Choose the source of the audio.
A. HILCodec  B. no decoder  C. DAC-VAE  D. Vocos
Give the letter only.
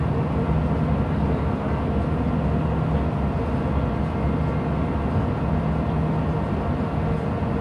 B